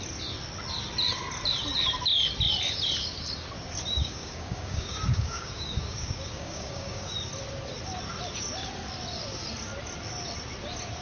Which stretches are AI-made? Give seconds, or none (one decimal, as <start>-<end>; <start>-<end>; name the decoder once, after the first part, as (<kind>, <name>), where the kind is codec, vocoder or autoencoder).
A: 4.0-7.1 (codec, DAC)